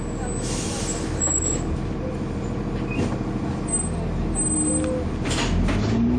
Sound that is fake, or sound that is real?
real